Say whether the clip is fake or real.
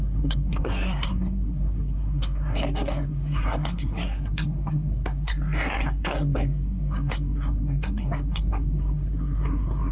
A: fake